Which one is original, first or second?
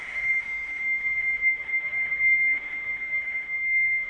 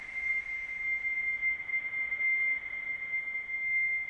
second